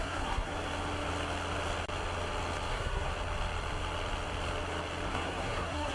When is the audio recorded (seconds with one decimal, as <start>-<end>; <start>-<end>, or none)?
0.5-2.7; 3.1-5.1